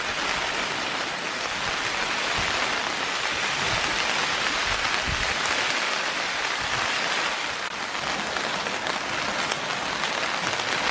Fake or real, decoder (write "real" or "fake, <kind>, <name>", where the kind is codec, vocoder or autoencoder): real